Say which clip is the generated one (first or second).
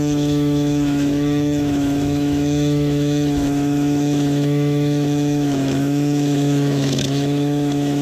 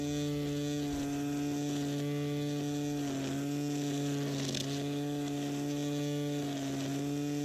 first